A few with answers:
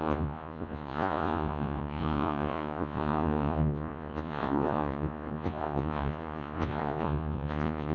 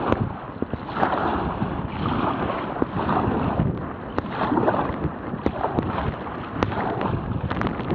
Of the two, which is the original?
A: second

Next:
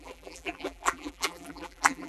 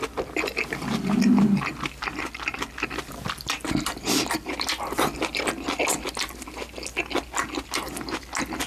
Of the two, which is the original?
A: second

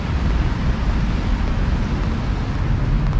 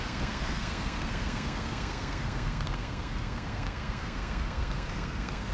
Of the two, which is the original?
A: first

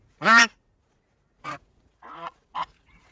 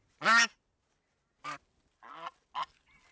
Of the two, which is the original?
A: second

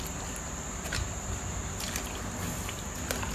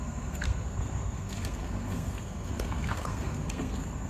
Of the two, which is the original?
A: first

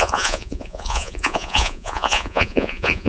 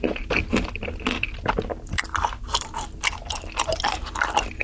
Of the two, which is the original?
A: second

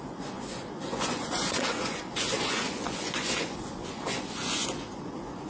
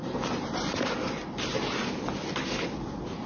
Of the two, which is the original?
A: second